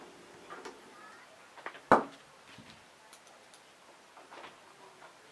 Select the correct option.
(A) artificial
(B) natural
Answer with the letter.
B